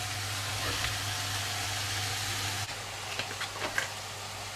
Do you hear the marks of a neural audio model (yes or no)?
no